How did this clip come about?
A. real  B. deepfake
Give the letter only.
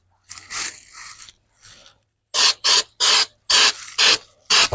A